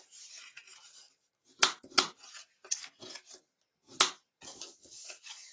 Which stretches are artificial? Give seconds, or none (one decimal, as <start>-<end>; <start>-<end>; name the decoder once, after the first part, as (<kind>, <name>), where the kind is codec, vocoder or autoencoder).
4.5-5.5 (vocoder, Vocos)